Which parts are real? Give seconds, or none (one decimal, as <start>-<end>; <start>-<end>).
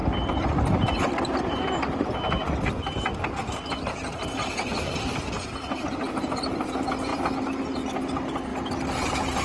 2.0-3.7; 6.6-7.1; 7.8-8.5